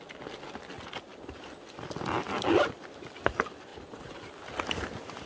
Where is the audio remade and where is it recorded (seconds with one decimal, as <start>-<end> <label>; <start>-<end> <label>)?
0.0-5.3 recorded